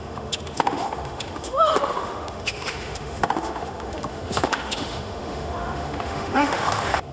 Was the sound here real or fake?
fake